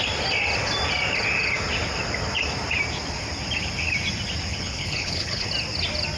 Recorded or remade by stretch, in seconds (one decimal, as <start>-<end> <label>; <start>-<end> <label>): 0.0-4.5 recorded; 4.5-5.5 remade; 5.5-6.2 recorded